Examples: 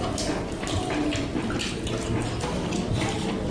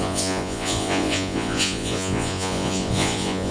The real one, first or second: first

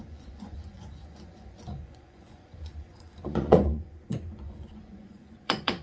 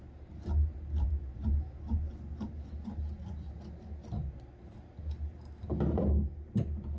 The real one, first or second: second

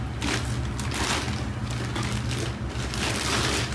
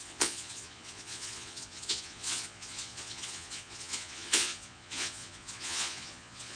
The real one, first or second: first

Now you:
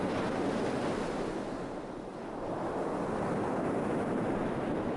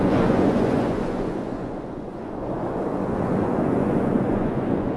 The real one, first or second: first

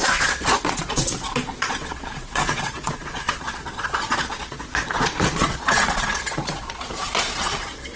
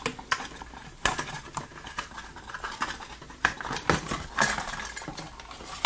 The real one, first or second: second